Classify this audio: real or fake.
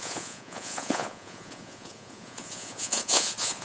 fake